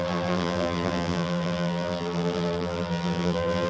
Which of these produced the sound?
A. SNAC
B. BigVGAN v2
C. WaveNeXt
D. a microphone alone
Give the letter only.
B